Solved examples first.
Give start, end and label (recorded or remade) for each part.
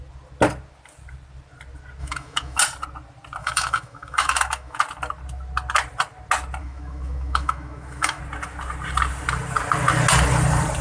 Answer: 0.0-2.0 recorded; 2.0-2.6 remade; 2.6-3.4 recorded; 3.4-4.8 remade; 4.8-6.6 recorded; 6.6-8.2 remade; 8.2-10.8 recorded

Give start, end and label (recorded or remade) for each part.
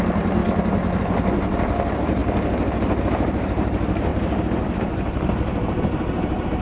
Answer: 0.0-0.4 remade; 0.4-1.0 recorded; 1.0-2.2 remade; 2.2-3.0 recorded; 3.0-6.6 remade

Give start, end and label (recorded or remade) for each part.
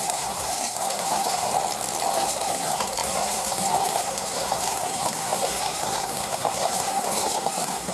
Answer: 0.0-1.5 remade; 1.5-2.1 recorded; 2.1-7.9 remade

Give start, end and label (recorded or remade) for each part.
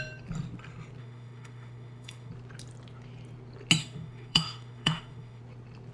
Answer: 0.0-1.0 recorded; 1.0-2.3 remade; 2.3-3.8 recorded; 3.8-5.4 remade; 5.4-5.9 recorded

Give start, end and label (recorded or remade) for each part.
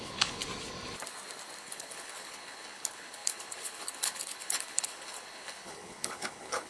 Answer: 0.0-0.4 remade; 0.4-1.6 recorded; 1.6-6.7 remade